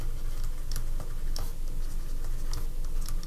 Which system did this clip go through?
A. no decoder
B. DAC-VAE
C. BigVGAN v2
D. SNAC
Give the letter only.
A